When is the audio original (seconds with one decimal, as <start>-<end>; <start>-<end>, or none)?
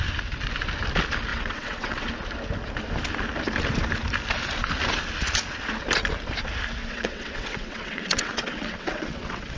0.0-1.3; 2.1-6.8